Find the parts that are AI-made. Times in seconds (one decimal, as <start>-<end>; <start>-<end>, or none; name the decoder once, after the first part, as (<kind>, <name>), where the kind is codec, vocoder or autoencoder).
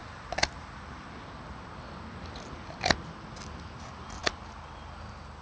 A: none